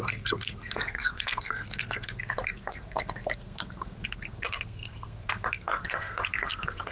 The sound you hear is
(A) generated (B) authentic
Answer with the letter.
A